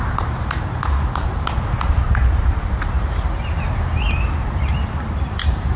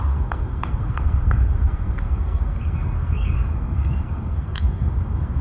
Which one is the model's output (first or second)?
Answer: second